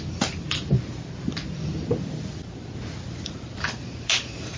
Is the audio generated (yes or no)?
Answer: no